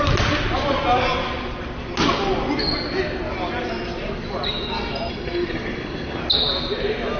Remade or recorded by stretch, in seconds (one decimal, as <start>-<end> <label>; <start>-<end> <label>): 0.0-5.1 recorded; 5.1-6.2 remade; 6.2-7.2 recorded